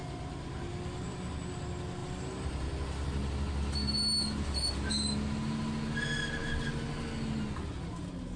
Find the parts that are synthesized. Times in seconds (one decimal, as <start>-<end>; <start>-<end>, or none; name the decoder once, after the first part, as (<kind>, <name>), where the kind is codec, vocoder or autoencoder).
none